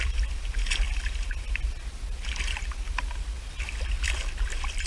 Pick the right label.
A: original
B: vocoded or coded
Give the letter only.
A